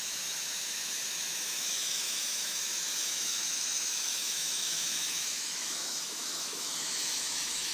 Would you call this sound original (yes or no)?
no